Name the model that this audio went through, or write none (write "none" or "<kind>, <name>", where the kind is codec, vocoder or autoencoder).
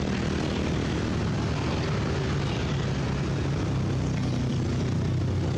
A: none